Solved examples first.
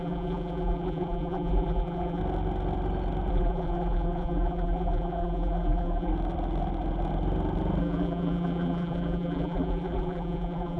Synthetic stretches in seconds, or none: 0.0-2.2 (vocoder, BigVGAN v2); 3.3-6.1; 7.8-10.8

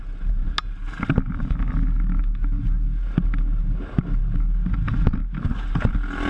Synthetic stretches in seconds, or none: none